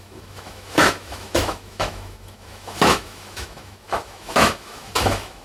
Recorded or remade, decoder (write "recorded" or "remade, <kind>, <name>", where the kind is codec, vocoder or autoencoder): remade, autoencoder, DAC-VAE